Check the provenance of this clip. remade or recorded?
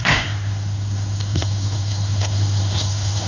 remade